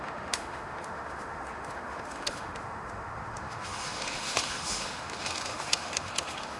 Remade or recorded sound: remade